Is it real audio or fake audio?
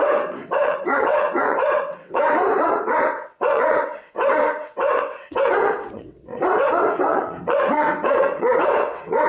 fake